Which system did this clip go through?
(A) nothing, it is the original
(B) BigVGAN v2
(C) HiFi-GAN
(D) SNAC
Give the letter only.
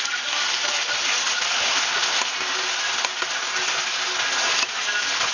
A